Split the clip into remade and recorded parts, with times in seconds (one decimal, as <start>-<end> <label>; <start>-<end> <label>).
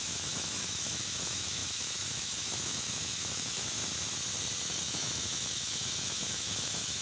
0.0-3.8 remade; 3.8-4.6 recorded; 4.6-7.0 remade